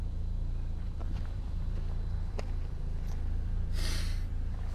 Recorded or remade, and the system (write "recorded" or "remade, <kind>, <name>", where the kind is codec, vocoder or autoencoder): remade, vocoder, BigVGAN v2